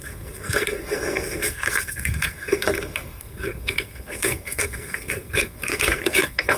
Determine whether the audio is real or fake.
fake